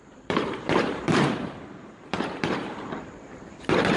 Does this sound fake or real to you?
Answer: fake